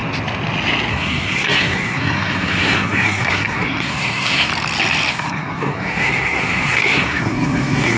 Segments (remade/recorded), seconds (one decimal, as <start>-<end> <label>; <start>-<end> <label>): 0.0-0.9 recorded; 0.9-4.5 remade; 4.5-5.1 recorded; 5.1-8.0 remade